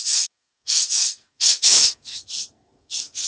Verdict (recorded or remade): remade